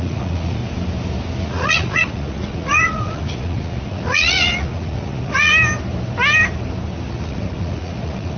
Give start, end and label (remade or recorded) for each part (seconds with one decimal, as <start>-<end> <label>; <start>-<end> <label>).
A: 0.0-0.6 remade; 0.6-1.4 recorded; 1.4-5.5 remade; 5.5-7.1 recorded; 7.1-8.4 remade